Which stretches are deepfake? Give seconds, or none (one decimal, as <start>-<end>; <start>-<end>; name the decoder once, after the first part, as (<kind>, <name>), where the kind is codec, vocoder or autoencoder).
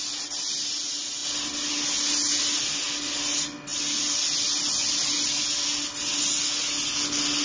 none